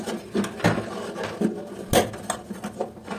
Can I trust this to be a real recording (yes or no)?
yes